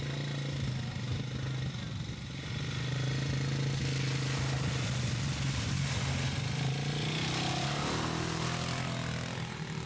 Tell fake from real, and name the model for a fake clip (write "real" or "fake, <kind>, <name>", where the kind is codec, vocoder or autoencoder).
real